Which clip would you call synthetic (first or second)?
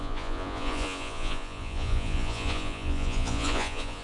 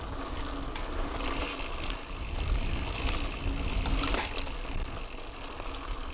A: first